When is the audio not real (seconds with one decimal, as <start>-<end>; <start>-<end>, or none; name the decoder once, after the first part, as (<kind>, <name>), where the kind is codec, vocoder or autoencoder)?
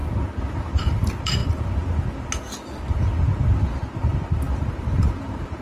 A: 0.6-1.4 (vocoder, BigVGAN v2); 4.8-5.6